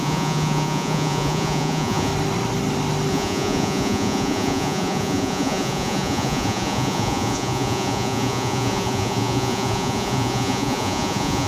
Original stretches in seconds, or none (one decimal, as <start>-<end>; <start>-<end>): 2.1-3.1